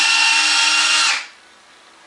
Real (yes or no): yes